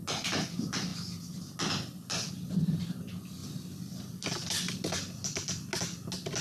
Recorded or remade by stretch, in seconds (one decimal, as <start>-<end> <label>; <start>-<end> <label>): 0.0-6.4 recorded